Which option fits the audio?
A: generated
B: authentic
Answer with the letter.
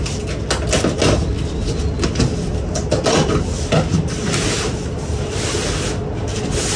B